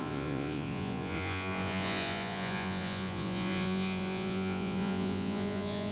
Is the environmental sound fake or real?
fake